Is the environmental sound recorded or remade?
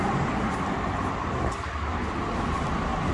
recorded